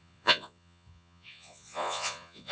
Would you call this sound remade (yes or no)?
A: yes